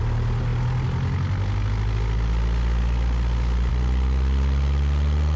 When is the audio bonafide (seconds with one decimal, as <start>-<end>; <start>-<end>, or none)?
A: 0.0-5.4

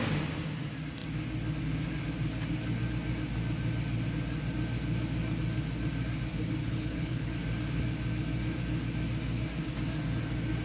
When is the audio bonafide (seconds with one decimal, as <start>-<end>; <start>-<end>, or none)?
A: 0.0-6.6; 7.3-10.6

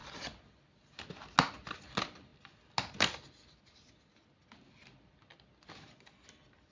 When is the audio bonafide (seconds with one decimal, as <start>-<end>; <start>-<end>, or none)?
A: 0.0-6.7

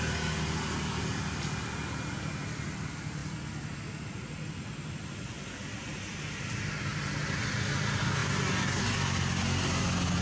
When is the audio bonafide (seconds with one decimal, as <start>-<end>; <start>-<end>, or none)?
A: 0.0-10.2

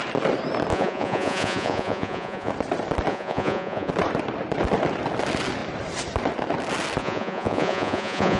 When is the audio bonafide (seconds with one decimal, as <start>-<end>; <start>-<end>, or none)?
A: 0.0-0.7; 2.5-3.1; 3.9-7.0

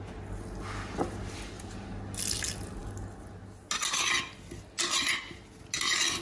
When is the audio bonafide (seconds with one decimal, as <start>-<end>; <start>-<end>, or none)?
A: 0.0-6.2